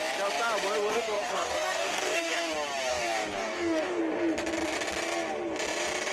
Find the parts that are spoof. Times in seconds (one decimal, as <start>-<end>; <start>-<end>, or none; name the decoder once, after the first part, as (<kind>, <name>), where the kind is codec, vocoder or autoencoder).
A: 0.9-2.5 (codec, DAC); 2.9-4.0